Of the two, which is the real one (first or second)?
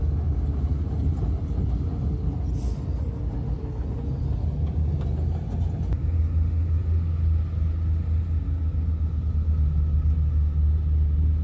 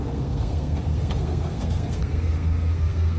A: first